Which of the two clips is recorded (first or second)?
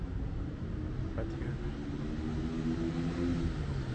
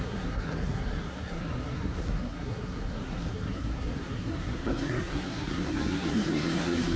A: first